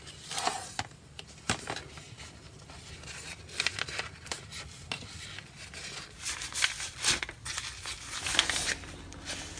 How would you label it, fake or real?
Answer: real